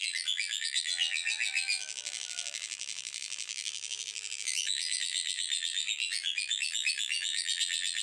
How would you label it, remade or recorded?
remade